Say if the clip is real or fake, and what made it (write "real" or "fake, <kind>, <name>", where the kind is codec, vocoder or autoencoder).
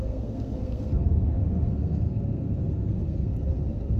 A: fake, codec, SNAC